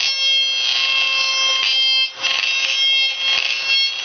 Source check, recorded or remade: recorded